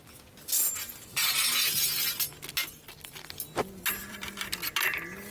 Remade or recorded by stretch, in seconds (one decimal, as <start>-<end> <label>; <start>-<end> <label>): 0.0-2.6 recorded; 2.6-3.3 remade; 3.3-4.0 recorded; 4.0-4.7 remade; 4.7-5.3 recorded